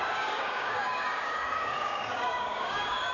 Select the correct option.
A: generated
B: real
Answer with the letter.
A